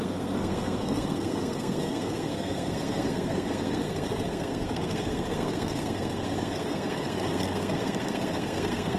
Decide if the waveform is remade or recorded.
remade